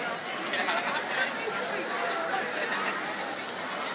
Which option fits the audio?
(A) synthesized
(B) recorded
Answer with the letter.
B